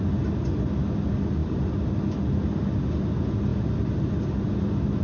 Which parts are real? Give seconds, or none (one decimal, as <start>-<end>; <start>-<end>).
0.0-3.5; 4.2-5.0